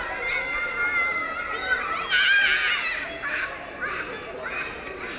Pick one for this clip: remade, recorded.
recorded